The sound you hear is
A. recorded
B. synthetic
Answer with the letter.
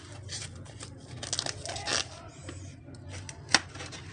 A